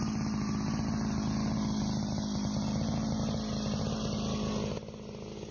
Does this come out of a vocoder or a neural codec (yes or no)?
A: no